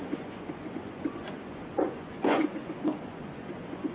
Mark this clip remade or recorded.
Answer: remade